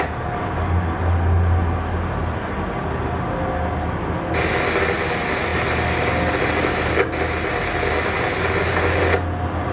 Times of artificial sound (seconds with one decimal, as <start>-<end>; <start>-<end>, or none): none